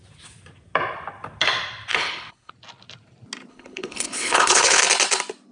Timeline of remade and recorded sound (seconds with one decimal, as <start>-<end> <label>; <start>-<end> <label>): 0.0-1.9 recorded; 1.9-2.5 remade; 2.5-3.5 recorded; 3.5-4.8 remade; 4.8-5.5 recorded